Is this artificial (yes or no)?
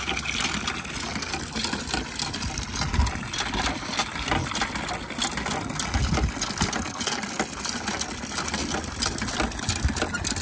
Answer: no